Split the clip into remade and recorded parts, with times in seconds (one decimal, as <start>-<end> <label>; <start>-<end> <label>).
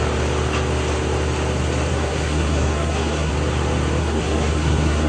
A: 0.0-1.9 recorded; 1.9-3.3 remade; 3.3-4.0 recorded; 4.0-5.1 remade